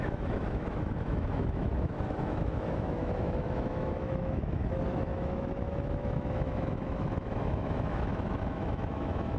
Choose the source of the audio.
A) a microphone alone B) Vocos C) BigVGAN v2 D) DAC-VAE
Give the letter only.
D